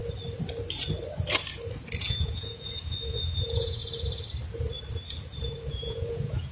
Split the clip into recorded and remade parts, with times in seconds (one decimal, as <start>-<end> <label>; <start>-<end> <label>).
0.0-2.0 recorded; 2.0-3.8 remade; 3.8-5.7 recorded; 5.7-6.5 remade

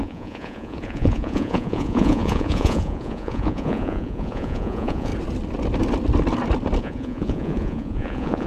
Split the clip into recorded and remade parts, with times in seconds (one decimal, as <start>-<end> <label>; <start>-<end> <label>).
0.0-5.1 remade; 5.1-6.8 recorded; 6.8-8.5 remade

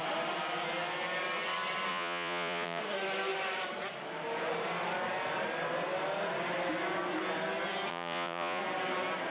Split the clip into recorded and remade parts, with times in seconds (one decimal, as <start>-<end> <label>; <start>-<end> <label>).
0.0-1.9 recorded; 1.9-2.8 remade; 2.8-7.9 recorded; 7.9-8.6 remade; 8.6-9.3 recorded

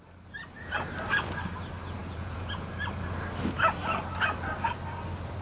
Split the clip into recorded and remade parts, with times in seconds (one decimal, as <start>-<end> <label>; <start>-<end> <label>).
0.0-2.0 recorded; 2.0-2.7 remade; 2.7-5.4 recorded

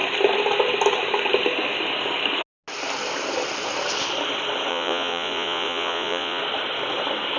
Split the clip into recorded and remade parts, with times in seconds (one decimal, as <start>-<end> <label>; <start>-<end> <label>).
0.0-4.7 recorded; 4.7-6.4 remade; 6.4-7.4 recorded

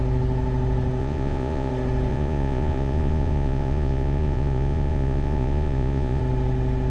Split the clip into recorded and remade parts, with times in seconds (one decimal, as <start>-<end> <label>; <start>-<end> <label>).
0.0-1.0 recorded; 1.0-1.7 remade; 1.7-2.1 recorded; 2.1-6.2 remade; 6.2-6.9 recorded